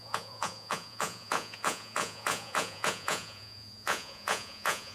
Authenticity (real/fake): fake